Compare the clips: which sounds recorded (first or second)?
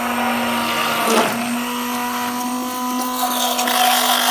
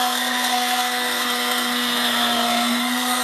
first